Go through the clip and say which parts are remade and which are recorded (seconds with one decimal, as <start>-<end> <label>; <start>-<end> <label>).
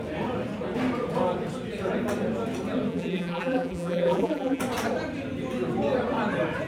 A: 0.0-2.9 recorded; 2.9-4.6 remade; 4.6-6.7 recorded